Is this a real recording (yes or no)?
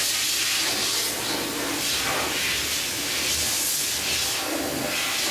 yes